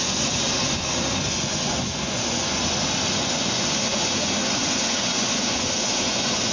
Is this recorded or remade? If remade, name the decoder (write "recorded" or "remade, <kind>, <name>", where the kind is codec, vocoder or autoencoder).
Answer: remade, vocoder, Vocos